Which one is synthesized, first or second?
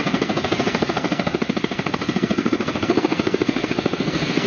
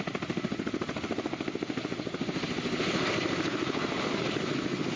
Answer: first